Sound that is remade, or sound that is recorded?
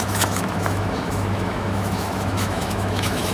remade